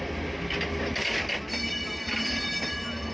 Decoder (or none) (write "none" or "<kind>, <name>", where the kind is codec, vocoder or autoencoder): none